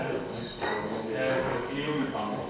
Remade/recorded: remade